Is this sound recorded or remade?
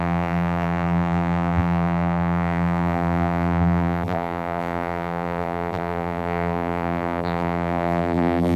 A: remade